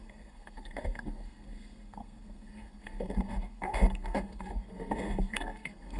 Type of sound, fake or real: fake